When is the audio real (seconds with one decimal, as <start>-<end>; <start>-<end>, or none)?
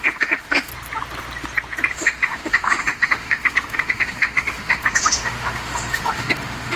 0.7-1.9